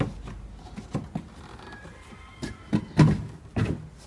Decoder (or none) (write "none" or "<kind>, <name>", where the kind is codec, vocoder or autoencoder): none